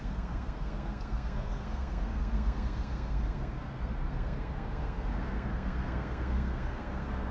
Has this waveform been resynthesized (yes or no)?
yes